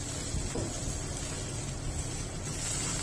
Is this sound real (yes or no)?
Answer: yes